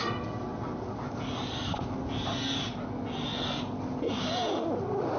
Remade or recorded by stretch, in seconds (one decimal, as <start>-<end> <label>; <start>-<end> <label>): 0.0-5.2 recorded